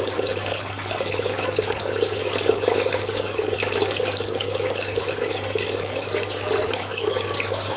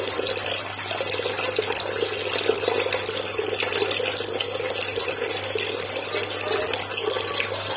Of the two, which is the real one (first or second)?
second